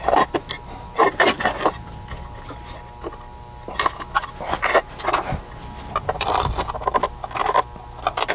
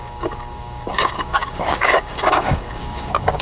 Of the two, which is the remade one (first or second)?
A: second